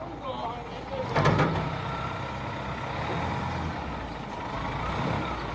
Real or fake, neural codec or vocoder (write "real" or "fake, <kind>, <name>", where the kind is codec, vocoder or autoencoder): real